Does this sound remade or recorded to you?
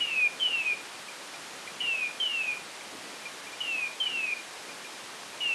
recorded